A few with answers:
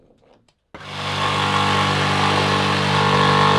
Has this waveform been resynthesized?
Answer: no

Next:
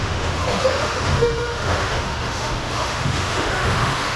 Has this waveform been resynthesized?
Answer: yes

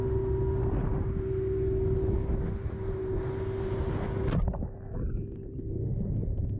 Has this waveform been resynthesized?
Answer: no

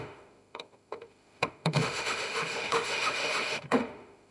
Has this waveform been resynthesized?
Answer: yes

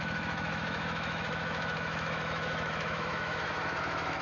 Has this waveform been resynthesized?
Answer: yes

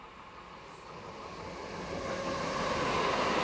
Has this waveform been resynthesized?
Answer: no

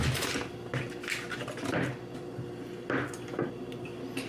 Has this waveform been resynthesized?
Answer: no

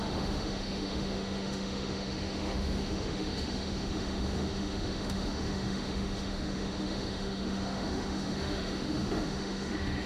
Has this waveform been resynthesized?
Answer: yes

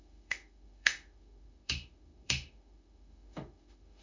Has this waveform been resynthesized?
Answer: yes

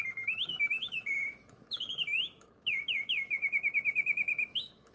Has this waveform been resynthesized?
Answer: yes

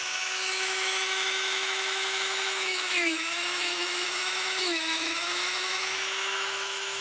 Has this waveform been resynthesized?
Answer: yes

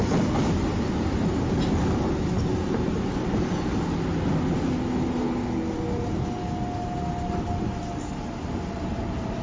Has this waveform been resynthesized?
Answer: no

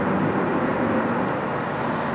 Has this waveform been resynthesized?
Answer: no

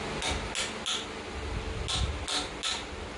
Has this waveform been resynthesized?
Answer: no